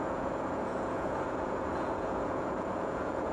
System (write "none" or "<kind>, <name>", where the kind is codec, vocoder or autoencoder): vocoder, Vocos